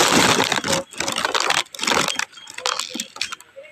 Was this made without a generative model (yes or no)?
yes